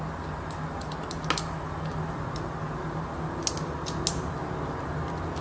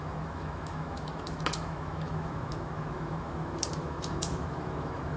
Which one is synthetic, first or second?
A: second